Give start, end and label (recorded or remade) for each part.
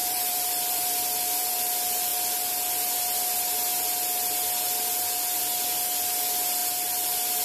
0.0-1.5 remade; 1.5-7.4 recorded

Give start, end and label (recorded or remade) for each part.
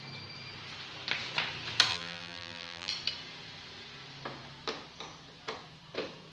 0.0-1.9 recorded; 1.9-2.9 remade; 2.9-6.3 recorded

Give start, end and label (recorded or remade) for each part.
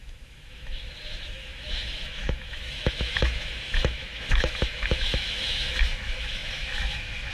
0.0-7.3 remade